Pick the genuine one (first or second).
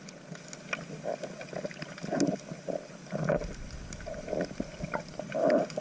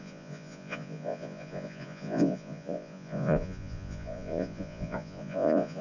first